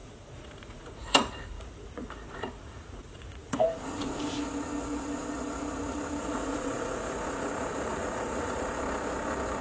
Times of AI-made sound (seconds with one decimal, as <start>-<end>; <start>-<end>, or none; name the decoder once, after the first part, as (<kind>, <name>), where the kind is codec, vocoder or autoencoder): 0.0-3.9 (vocoder, Vocos); 6.2-8.8